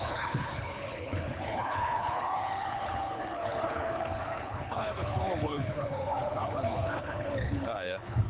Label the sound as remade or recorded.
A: remade